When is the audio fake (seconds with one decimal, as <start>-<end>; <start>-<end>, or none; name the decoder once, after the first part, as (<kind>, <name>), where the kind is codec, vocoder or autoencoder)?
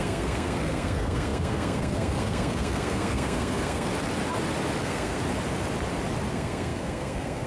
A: 0.0-3.9 (codec, SNAC); 4.8-5.2; 6.3-7.5